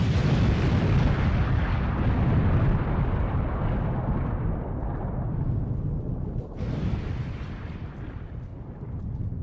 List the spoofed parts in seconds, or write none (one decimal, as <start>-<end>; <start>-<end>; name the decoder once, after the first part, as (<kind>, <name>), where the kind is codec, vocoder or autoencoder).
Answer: none